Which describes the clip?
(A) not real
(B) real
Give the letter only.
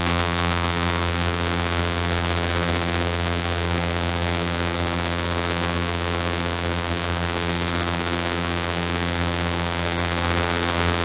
A